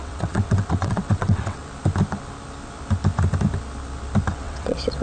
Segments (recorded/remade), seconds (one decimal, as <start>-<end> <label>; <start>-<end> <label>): 0.0-1.6 remade; 1.6-4.3 recorded; 4.3-5.0 remade